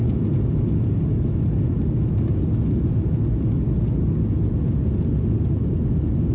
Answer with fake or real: real